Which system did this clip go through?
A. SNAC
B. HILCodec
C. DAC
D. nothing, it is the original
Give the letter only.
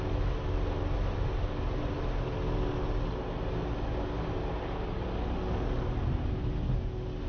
D